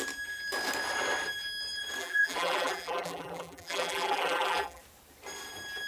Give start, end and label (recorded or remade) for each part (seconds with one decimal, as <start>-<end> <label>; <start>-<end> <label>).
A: 0.0-2.0 recorded; 2.0-4.8 remade; 4.8-5.9 recorded